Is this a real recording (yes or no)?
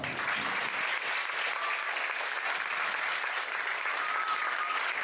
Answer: yes